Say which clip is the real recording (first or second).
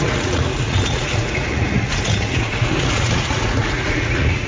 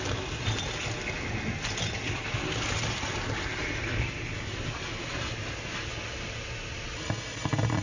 second